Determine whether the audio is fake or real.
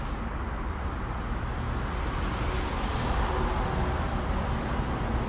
real